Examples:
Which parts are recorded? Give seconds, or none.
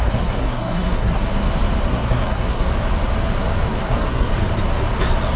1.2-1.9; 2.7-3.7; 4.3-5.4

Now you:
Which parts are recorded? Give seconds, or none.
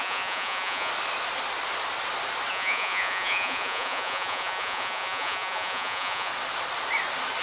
0.9-2.5; 6.3-7.4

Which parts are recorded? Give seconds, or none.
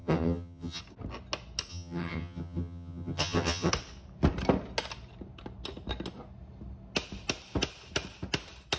0.8-1.7; 3.7-8.8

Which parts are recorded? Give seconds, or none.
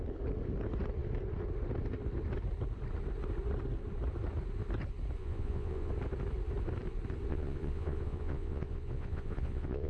0.0-5.2; 5.9-7.3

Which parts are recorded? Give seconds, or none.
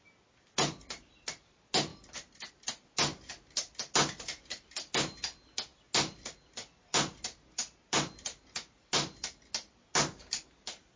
0.0-11.0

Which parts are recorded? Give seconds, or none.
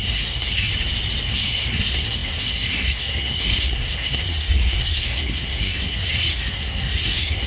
0.7-1.3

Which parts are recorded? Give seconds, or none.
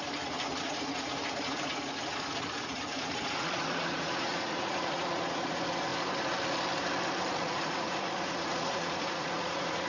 5.9-7.3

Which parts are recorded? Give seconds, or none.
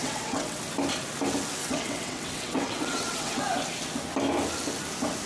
0.6-1.6; 3.4-5.3